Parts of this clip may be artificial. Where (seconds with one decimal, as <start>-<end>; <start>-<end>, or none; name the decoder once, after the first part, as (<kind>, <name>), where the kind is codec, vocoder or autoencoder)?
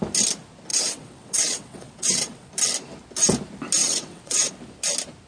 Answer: 0.7-2.5 (vocoder, WaveNeXt); 3.8-4.5